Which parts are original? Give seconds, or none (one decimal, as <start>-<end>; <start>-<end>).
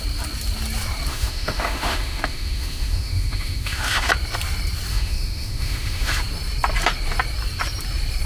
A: 0.0-1.1; 4.1-4.9; 6.2-8.3